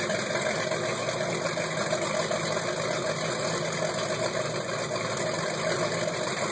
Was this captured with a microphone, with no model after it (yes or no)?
yes